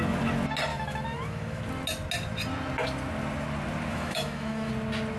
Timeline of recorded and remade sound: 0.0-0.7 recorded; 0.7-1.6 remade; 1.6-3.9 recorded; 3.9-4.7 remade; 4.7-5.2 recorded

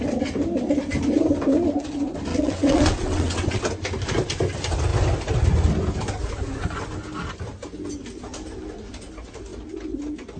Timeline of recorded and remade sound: 0.0-2.3 recorded; 2.3-3.6 remade; 3.6-10.4 recorded

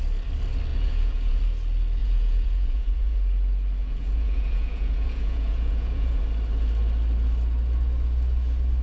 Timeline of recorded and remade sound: 0.0-0.7 recorded; 0.7-1.4 remade; 1.4-2.0 recorded; 2.0-3.2 remade; 3.2-3.8 recorded; 3.8-6.2 remade; 6.2-8.8 recorded